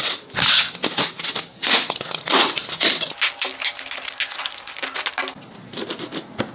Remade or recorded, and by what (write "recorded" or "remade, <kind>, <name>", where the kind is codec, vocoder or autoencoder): recorded